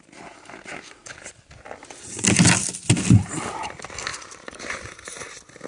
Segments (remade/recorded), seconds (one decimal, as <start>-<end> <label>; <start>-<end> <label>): 0.0-4.1 recorded; 4.1-4.9 remade; 4.9-5.7 recorded

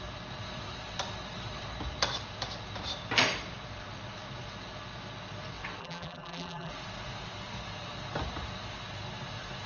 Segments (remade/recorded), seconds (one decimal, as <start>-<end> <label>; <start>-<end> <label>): 0.0-5.8 recorded; 5.8-6.7 remade; 6.7-9.7 recorded

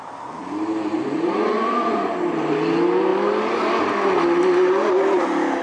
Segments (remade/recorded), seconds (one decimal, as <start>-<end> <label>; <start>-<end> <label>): 0.0-0.4 recorded; 0.4-1.5 remade; 1.5-5.6 recorded

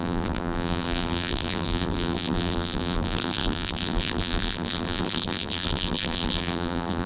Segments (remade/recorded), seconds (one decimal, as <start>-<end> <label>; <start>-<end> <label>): 0.0-7.1 remade

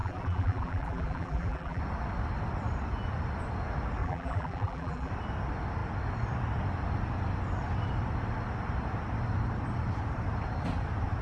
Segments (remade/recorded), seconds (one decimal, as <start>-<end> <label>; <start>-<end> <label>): 0.0-1.8 remade; 1.8-4.0 recorded; 4.0-5.1 remade; 5.1-11.2 recorded